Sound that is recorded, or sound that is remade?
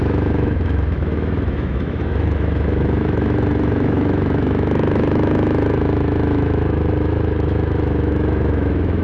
remade